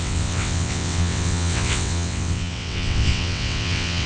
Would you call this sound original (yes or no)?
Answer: no